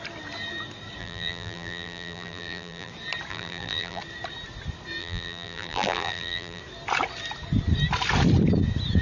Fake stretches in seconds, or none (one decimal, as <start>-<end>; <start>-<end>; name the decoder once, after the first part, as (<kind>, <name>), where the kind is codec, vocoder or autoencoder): 1.0-2.9 (vocoder, BigVGAN v2); 3.3-4.0; 5.0-6.6